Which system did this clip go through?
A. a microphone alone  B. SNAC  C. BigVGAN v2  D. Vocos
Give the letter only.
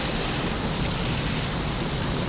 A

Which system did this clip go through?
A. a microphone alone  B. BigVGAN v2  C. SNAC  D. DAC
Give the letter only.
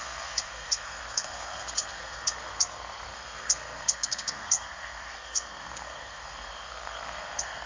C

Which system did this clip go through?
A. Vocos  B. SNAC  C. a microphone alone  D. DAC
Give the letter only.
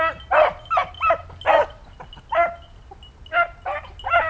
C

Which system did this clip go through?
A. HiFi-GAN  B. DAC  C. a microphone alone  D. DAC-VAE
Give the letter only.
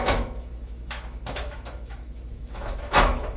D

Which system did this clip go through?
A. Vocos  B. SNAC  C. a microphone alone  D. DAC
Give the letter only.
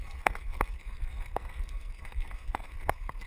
B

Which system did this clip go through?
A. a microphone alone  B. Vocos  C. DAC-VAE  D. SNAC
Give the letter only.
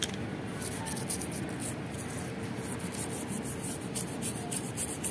A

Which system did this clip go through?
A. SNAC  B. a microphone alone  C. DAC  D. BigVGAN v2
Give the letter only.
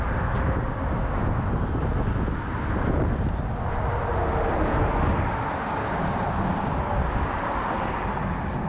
B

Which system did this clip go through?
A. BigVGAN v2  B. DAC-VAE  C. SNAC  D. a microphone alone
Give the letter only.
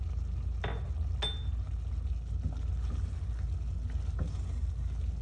D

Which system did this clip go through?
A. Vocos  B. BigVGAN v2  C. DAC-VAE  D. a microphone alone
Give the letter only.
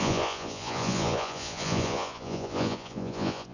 A